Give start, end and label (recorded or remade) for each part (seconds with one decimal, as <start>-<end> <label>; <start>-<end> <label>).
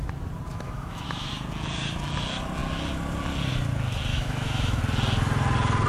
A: 0.0-0.5 recorded; 0.5-1.3 remade; 1.3-4.1 recorded; 4.1-4.8 remade; 4.8-5.9 recorded